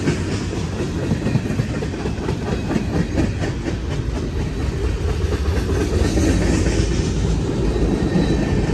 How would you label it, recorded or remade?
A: recorded